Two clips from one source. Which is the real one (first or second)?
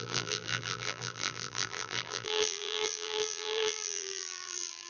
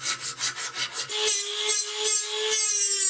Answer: second